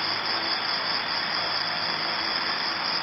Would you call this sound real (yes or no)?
no